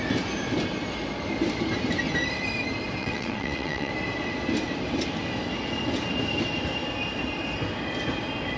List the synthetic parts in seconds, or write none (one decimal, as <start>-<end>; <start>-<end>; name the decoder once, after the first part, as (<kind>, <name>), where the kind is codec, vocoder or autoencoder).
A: 3.0-3.9 (vocoder, WaveNeXt)